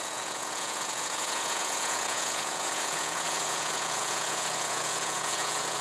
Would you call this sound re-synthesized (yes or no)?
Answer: yes